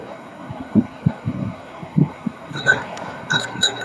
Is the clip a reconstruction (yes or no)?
yes